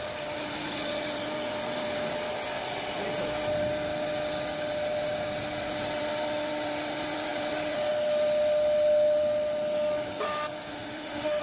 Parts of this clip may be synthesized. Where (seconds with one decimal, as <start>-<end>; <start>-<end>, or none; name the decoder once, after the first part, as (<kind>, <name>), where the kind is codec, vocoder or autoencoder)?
10.7-11.4 (autoencoder, DAC-VAE)